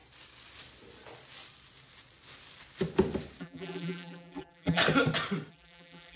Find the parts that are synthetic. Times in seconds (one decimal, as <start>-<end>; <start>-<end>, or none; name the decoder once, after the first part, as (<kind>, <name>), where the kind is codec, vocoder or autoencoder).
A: 3.4-4.8 (vocoder, BigVGAN v2); 5.5-6.2